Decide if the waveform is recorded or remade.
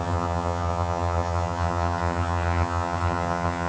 remade